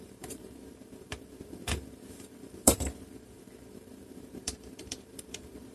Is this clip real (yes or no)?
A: no